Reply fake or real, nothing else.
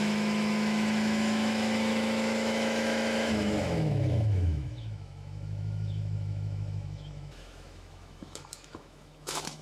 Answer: fake